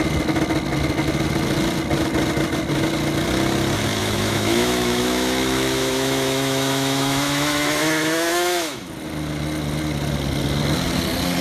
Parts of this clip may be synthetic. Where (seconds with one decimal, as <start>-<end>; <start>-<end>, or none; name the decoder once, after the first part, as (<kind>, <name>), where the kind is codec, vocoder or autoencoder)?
4.0-8.9 (autoencoder, DAC-VAE)